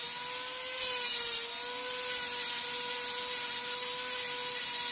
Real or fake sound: real